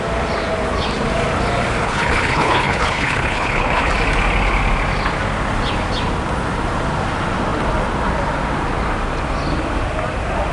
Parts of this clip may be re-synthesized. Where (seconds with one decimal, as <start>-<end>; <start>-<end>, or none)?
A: 1.8-3.9